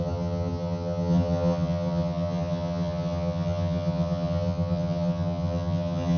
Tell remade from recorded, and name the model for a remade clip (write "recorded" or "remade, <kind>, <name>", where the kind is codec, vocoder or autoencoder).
remade, vocoder, HiFi-GAN